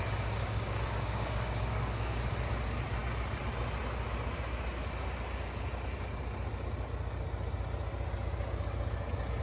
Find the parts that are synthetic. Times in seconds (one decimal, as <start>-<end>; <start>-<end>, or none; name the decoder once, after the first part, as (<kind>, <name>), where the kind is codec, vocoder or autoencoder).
0.4-2.2 (codec, DAC)